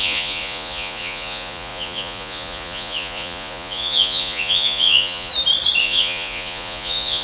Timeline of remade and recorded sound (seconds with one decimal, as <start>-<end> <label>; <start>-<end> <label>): 0.0-5.3 remade; 5.3-5.8 recorded; 5.8-7.2 remade